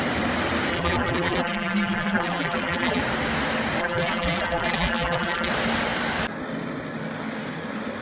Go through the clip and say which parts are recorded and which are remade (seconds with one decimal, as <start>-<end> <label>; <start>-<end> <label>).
0.0-0.7 recorded; 0.7-3.0 remade; 3.0-3.8 recorded; 3.8-5.5 remade; 5.5-8.0 recorded